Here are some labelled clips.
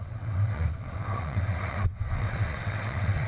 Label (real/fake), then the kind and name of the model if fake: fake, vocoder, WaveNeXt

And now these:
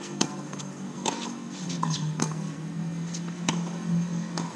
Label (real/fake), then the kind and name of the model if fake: fake, codec, SNAC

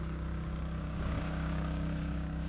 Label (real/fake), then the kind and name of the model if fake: fake, codec, DAC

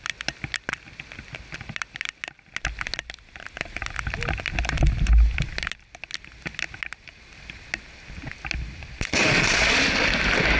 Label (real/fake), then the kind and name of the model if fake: real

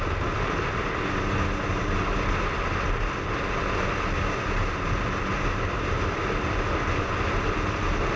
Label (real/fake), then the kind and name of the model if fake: real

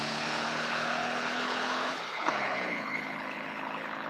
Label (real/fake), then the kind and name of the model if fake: fake, codec, HILCodec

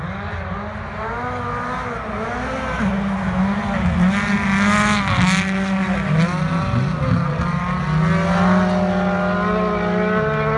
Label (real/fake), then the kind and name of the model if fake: real